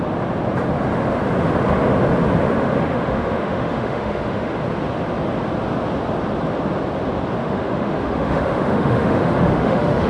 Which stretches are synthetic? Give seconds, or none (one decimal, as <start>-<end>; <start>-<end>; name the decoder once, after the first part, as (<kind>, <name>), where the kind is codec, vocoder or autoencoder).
2.6-4.5 (autoencoder, DAC-VAE); 7.4-10.1